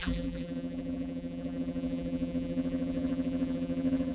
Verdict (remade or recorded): remade